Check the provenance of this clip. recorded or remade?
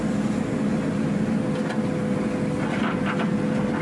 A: recorded